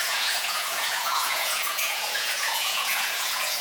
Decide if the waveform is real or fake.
fake